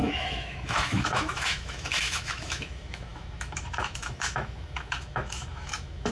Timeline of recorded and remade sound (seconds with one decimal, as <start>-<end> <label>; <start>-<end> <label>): 0.0-6.1 remade